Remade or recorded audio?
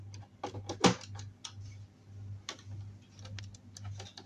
recorded